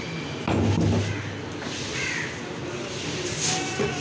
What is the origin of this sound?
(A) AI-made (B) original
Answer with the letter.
B